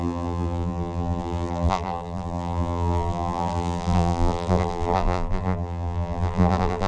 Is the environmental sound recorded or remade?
remade